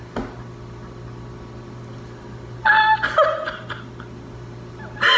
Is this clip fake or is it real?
real